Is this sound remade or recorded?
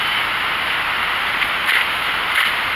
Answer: recorded